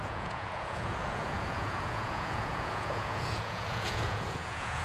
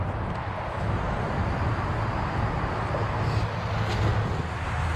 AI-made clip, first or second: first